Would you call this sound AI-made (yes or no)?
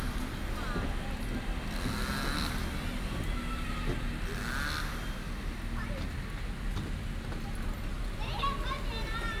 no